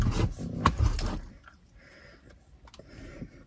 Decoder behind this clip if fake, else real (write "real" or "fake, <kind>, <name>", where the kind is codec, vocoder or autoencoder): real